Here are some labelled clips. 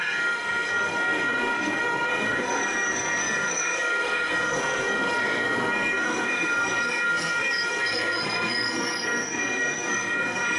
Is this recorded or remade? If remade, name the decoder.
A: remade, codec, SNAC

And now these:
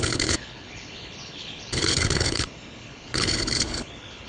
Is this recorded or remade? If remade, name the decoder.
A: remade, codec, HILCodec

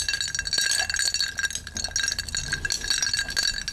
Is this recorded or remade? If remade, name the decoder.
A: recorded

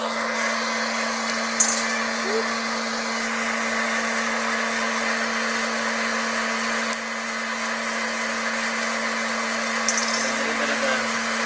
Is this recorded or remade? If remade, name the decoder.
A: recorded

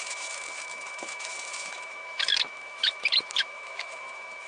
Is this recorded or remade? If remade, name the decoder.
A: remade, autoencoder, DAC-VAE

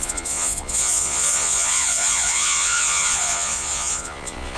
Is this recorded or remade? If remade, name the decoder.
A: remade, vocoder, Vocos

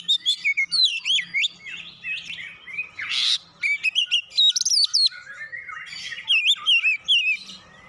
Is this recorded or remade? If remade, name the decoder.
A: recorded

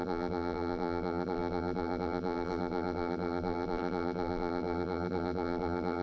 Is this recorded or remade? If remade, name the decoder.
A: remade, vocoder, BigVGAN v2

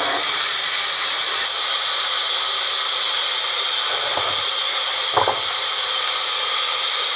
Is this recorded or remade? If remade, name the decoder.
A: recorded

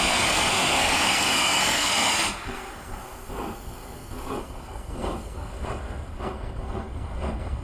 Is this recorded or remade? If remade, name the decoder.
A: remade, codec, SNAC